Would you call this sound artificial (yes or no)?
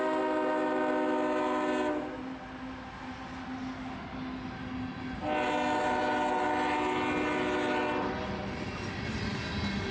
no